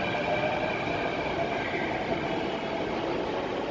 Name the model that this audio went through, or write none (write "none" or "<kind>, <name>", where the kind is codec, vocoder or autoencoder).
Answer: none